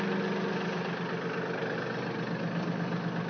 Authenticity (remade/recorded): recorded